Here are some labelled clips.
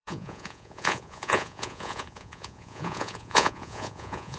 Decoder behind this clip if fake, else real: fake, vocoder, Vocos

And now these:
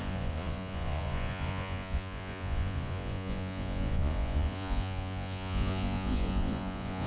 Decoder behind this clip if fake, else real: fake, vocoder, Vocos